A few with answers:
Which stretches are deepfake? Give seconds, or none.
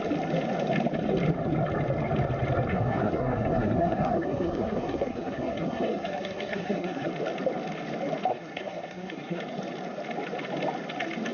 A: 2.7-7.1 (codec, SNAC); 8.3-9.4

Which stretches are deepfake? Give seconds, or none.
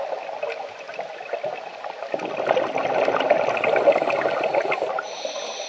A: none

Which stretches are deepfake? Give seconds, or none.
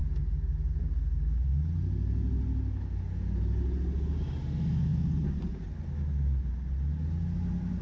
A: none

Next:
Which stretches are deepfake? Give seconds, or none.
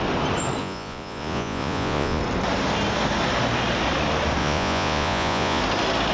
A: 0.6-2.2 (vocoder, Vocos); 4.4-5.6